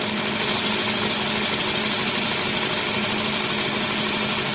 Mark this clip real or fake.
real